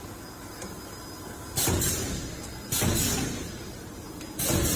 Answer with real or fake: real